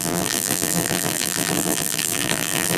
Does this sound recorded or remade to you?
remade